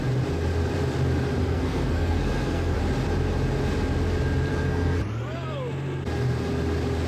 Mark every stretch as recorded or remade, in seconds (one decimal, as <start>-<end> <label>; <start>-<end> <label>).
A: 0.0-1.4 recorded; 1.4-2.8 remade; 2.8-4.5 recorded; 4.5-5.0 remade; 5.0-7.1 recorded